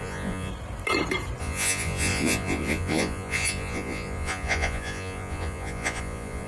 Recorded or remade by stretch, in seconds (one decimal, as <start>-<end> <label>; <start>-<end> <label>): 0.0-0.5 remade; 0.5-1.4 recorded; 1.4-6.5 remade

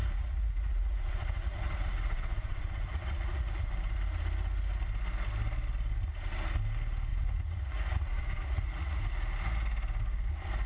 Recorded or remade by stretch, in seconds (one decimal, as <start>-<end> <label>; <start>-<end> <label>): 0.0-3.6 remade; 3.6-7.1 recorded; 7.1-9.0 remade; 9.0-10.7 recorded

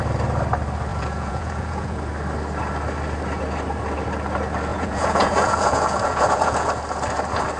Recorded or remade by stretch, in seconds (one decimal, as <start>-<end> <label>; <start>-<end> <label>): 0.0-0.9 recorded; 0.9-2.0 remade; 2.0-4.7 recorded; 4.7-6.7 remade; 6.7-7.6 recorded

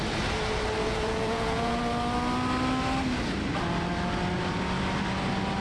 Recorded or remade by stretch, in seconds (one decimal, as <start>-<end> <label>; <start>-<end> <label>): 0.0-0.8 recorded; 0.8-1.8 remade; 1.8-5.6 recorded

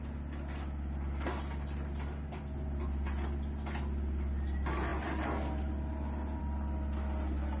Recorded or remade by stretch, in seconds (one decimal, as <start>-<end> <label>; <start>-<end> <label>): 0.0-7.6 recorded